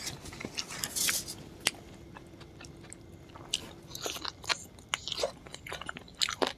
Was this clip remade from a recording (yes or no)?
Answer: no